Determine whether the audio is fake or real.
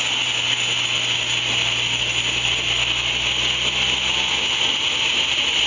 real